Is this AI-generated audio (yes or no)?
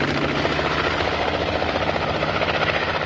no